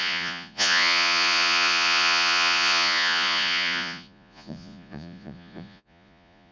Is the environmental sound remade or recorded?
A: remade